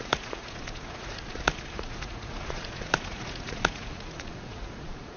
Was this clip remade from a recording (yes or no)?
yes